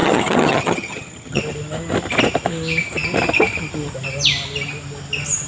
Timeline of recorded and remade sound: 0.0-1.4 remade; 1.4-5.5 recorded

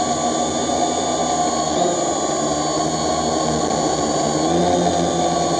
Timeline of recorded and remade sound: 0.0-5.6 recorded

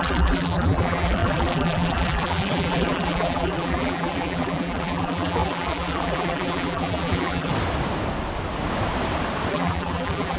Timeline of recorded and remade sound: 0.0-7.5 remade; 7.5-9.5 recorded; 9.5-10.4 remade

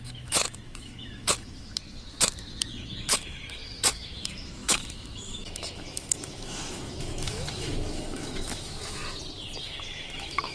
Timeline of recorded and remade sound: 0.0-9.0 remade; 9.0-9.6 recorded; 9.6-10.5 remade

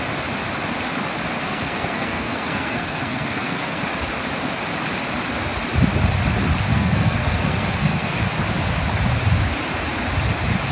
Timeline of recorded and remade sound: 0.0-1.4 recorded; 1.4-3.8 remade; 3.8-6.7 recorded; 6.7-8.2 remade; 8.2-10.7 recorded